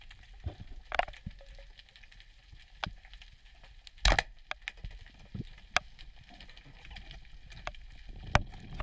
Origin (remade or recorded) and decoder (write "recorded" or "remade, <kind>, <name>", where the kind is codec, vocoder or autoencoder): recorded